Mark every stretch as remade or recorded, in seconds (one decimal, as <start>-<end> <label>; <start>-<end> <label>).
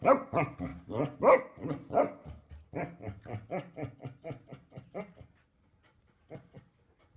0.0-7.2 recorded